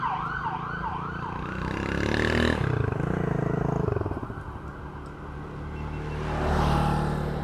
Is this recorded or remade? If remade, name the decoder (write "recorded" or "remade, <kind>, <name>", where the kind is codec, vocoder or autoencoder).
recorded